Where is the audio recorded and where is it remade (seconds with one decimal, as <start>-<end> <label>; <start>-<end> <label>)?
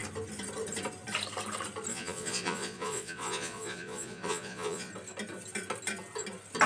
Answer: 0.0-1.9 recorded; 1.9-4.9 remade; 4.9-6.7 recorded